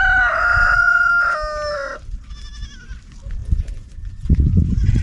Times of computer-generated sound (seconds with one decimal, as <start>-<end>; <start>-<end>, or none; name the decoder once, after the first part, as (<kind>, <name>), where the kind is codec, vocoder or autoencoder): 0.5-1.1 (vocoder, Vocos); 3.4-5.0